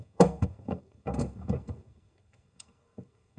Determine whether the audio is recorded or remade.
remade